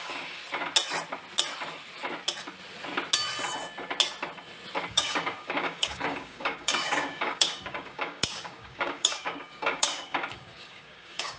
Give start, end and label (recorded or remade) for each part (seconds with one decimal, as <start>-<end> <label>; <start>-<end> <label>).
0.0-0.4 remade; 0.4-4.9 recorded; 4.9-11.4 remade